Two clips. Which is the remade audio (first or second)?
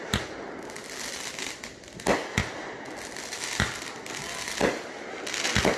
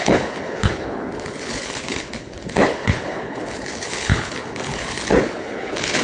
second